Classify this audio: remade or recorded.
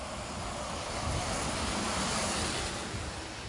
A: recorded